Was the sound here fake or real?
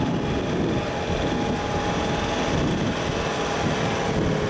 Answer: real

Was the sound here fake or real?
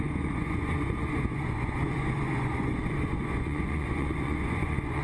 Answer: fake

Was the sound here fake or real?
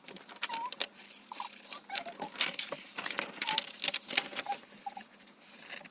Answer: real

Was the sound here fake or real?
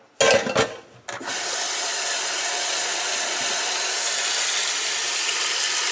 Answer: real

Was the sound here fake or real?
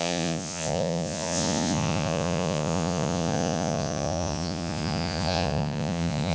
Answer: fake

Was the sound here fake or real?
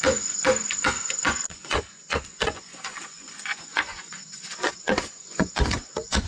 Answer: fake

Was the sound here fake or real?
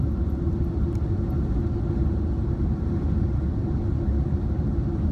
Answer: real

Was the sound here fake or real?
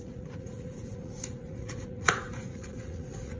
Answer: fake